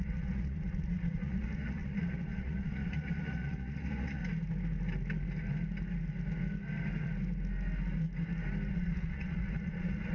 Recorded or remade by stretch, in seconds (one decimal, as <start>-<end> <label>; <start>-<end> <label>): 0.0-4.2 remade; 4.2-8.7 recorded; 8.7-10.1 remade